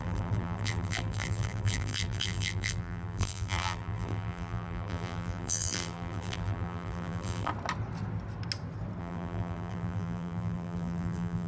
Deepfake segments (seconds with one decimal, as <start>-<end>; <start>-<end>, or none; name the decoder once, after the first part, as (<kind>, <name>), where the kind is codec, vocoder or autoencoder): 0.0-7.5 (vocoder, BigVGAN v2); 9.0-11.5